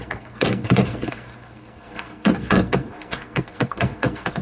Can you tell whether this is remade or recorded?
remade